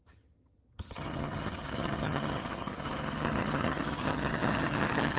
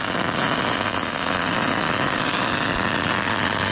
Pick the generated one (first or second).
first